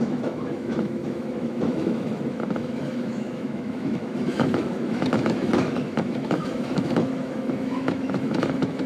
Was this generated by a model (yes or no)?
yes